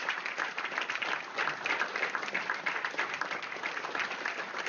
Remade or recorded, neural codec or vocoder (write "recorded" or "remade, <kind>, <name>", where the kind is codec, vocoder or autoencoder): recorded